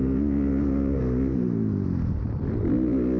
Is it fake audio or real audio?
real